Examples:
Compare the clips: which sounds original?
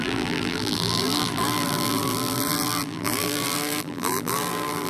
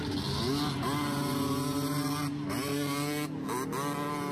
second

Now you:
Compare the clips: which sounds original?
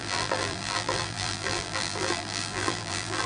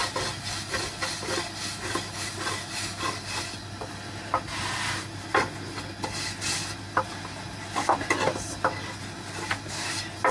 second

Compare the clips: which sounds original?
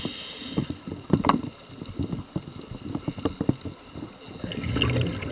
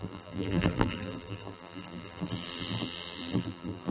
first